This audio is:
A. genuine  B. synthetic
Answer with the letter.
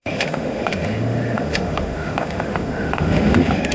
B